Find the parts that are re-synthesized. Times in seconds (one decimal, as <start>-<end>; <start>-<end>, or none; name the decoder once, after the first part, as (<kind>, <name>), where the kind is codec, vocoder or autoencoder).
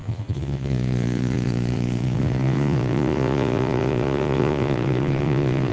0.0-5.7 (vocoder, Vocos)